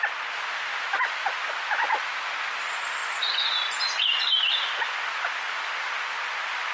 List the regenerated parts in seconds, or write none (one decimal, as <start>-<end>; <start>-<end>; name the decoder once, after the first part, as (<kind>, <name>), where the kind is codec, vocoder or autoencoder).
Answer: none